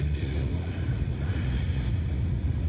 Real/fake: fake